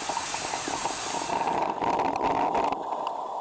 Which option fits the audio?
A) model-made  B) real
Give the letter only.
B